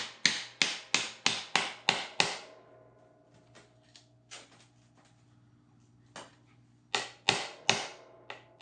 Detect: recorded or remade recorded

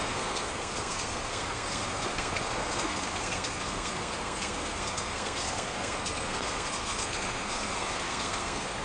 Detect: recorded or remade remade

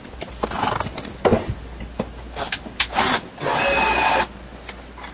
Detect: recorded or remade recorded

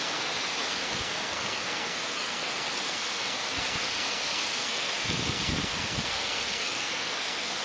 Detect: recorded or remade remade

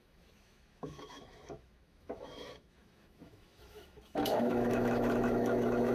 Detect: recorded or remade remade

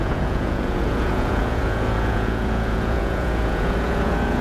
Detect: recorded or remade remade